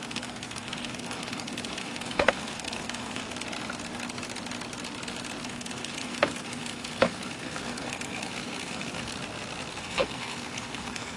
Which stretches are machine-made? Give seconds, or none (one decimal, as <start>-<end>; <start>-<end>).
0.0-3.2; 5.4-9.1; 9.8-11.2